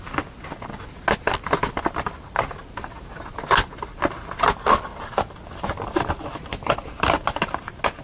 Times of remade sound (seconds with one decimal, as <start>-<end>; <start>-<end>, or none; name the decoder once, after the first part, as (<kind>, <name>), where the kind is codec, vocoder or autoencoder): none